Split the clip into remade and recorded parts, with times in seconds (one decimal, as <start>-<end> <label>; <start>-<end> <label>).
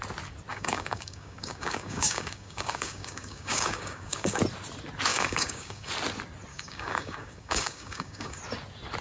0.0-0.5 recorded; 0.5-4.4 remade; 4.4-5.1 recorded; 5.1-5.9 remade; 5.9-6.5 recorded; 6.5-8.4 remade; 8.4-9.0 recorded